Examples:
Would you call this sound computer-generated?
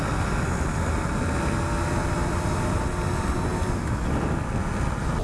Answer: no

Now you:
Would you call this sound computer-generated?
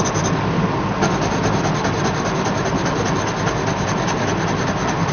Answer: no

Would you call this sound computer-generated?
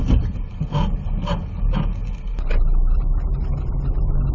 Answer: no